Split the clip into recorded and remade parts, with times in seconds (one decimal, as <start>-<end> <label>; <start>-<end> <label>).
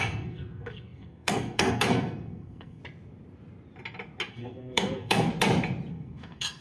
0.0-2.8 remade; 2.8-4.3 recorded; 4.3-5.3 remade; 5.3-5.9 recorded; 5.9-6.6 remade